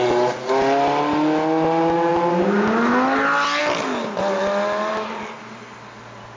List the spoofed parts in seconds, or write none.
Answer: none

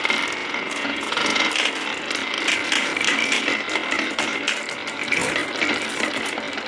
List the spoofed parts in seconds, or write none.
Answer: 0.4-1.5 (vocoder, Vocos)